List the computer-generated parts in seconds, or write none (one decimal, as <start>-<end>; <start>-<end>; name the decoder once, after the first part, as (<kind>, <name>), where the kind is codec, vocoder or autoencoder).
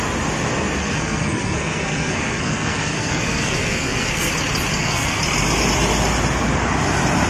0.8-4.3 (codec, SNAC); 4.7-5.2